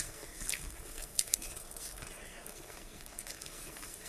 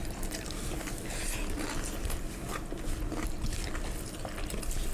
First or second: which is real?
second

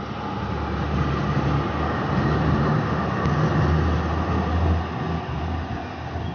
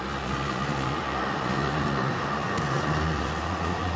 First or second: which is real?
first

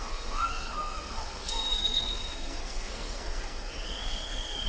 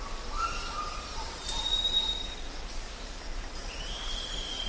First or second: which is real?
second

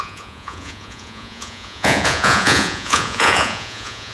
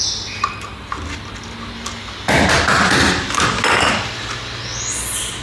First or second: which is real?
second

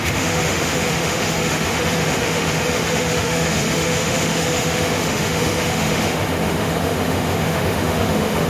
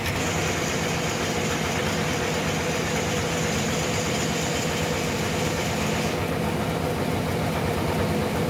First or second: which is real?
second